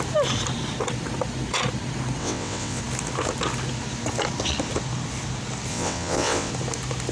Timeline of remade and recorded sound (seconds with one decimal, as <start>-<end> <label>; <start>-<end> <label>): 0.0-2.2 recorded; 2.2-2.8 remade; 2.8-5.7 recorded; 5.7-6.5 remade; 6.5-7.1 recorded